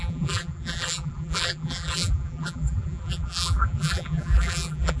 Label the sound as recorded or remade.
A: remade